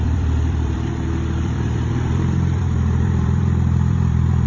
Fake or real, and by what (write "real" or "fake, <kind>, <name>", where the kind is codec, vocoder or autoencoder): fake, vocoder, BigVGAN v2